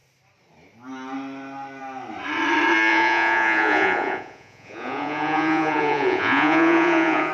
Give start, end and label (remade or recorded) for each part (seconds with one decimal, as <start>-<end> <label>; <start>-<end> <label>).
0.0-2.9 recorded; 2.9-7.3 remade

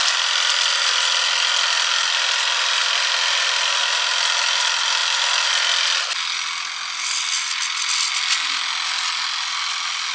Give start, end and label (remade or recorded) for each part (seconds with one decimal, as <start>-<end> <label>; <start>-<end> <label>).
0.0-10.1 recorded

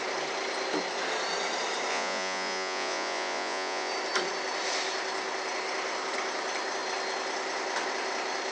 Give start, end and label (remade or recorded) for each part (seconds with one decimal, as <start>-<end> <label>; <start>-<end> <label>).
0.0-1.9 recorded; 1.9-3.9 remade; 3.9-8.5 recorded

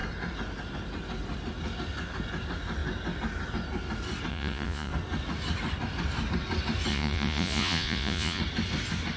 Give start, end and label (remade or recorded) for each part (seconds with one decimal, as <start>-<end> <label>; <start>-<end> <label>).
0.0-4.3 recorded; 4.3-4.9 remade; 4.9-6.9 recorded; 6.9-8.4 remade; 8.4-9.2 recorded

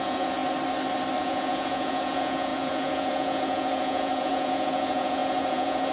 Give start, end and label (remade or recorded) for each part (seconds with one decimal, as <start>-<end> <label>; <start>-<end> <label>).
0.0-0.4 remade; 0.4-1.2 recorded; 1.2-5.9 remade

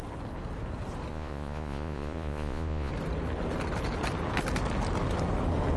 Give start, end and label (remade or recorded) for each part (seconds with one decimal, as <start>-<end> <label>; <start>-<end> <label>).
0.0-1.1 recorded; 1.1-2.9 remade; 2.9-5.8 recorded